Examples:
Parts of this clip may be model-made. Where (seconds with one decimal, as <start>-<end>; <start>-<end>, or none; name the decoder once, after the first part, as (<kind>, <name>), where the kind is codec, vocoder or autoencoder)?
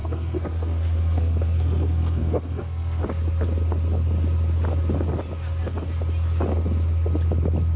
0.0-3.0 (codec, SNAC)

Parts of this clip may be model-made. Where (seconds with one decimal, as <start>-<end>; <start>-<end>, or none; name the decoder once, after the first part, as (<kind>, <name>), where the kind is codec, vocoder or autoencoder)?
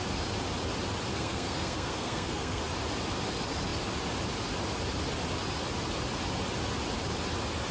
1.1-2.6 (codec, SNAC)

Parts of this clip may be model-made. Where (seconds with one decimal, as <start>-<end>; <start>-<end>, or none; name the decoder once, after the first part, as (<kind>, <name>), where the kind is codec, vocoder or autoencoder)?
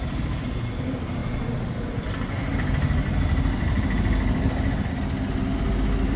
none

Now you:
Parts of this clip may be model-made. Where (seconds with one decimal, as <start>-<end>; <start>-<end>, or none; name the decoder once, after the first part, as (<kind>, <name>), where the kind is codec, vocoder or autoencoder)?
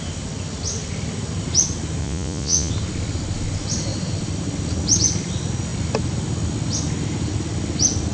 2.0-2.7 (vocoder, Vocos)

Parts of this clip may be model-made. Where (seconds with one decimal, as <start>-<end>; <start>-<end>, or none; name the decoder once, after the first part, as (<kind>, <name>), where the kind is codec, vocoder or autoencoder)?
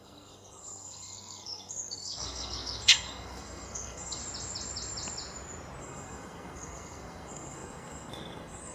0.0-4.2 (codec, SNAC); 5.8-8.7